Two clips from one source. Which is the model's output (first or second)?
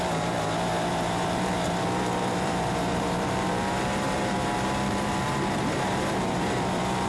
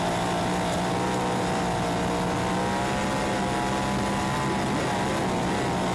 first